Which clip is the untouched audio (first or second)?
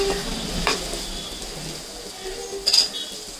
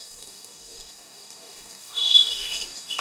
first